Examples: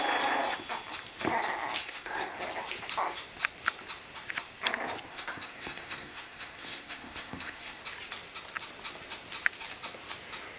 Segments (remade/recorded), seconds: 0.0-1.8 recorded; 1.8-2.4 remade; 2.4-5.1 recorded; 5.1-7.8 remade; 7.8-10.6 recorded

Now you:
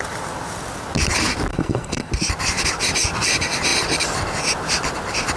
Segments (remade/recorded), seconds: 0.0-1.5 recorded; 1.5-2.1 remade; 2.1-5.4 recorded

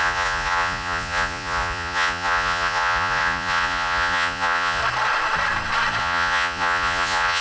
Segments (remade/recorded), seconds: 0.0-4.8 remade; 4.8-6.0 recorded; 6.0-7.4 remade

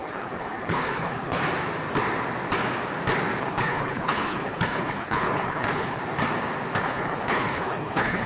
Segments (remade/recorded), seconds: 0.0-1.4 remade; 1.4-3.4 recorded; 3.4-6.0 remade; 6.0-6.8 recorded; 6.8-8.3 remade

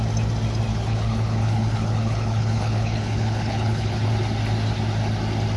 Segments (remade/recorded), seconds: 0.0-0.7 recorded; 0.7-4.1 remade; 4.1-5.6 recorded

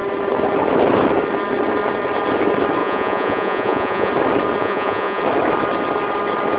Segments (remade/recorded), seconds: 0.0-2.8 recorded; 2.8-4.1 remade; 4.1-4.6 recorded; 4.6-5.2 remade; 5.2-6.6 recorded

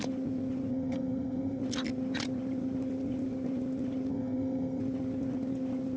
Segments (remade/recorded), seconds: 0.0-0.7 recorded; 0.7-1.6 remade; 1.6-4.1 recorded; 4.1-4.8 remade; 4.8-6.0 recorded

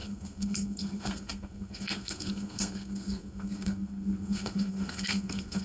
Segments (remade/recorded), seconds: 0.0-5.6 remade